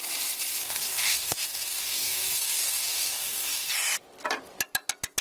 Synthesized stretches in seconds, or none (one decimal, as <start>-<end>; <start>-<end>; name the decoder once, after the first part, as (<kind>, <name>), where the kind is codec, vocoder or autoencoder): 0.6-3.7 (codec, DAC)

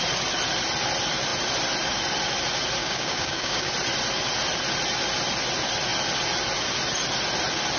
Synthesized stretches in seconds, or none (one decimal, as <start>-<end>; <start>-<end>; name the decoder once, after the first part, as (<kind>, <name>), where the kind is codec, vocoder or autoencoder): 2.8-3.7 (codec, DAC)

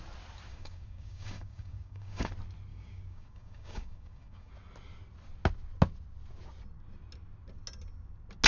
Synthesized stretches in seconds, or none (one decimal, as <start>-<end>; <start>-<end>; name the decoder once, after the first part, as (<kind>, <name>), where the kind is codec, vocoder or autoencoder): 0.5-2.3 (codec, DAC); 2.7-4.5

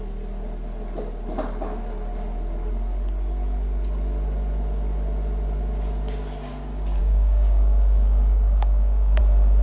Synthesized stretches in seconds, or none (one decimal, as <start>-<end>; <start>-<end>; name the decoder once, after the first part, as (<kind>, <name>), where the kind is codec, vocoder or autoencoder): 7.0-9.2 (codec, DAC)

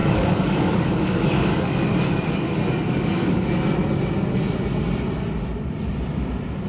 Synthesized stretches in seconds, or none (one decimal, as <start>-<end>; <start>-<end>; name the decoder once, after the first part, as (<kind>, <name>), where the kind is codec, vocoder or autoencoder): 0.0-3.6 (codec, DAC)

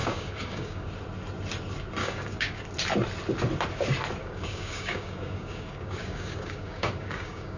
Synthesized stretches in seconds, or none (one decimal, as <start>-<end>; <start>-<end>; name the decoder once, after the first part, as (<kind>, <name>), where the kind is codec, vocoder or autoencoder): 0.0-0.9 (codec, DAC); 2.0-2.6; 4.2-7.6

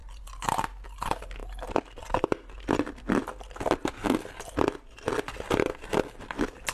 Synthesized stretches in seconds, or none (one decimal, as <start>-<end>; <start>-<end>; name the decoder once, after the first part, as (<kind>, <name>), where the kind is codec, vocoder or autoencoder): none

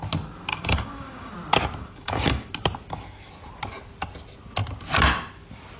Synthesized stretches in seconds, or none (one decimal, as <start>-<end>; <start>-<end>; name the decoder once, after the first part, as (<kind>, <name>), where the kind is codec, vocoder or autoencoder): 0.5-1.3 (codec, DAC); 1.8-2.5